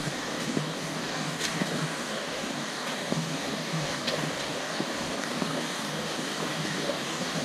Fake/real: fake